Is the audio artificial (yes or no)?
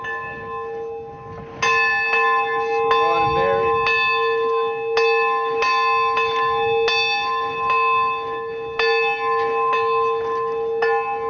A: no